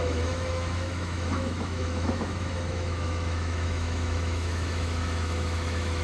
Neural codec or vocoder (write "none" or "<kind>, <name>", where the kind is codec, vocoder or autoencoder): autoencoder, DAC-VAE